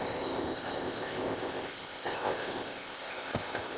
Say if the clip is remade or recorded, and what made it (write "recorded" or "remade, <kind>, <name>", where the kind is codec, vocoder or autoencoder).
remade, codec, ZipCodec